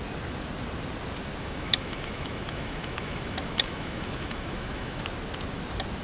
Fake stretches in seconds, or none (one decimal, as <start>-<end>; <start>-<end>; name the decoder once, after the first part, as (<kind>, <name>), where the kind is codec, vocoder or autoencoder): 1.4-5.0 (autoencoder, DAC-VAE)